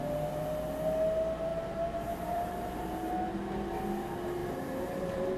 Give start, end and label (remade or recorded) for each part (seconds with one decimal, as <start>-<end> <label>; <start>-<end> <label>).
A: 0.0-1.5 recorded; 1.5-3.1 remade; 3.1-4.4 recorded; 4.4-5.4 remade